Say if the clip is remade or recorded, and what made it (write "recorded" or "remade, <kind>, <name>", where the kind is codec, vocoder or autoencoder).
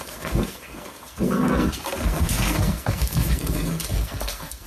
remade, codec, SNAC